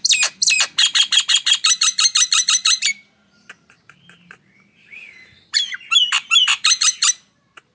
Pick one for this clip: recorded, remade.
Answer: remade